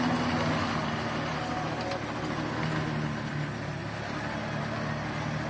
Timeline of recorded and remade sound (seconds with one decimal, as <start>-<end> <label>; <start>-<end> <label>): 0.0-5.5 recorded